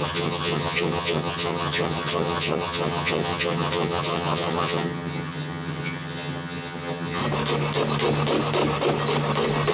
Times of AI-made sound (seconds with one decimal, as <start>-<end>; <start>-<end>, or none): 0.0-7.2